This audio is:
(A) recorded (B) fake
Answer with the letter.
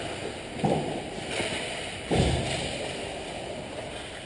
A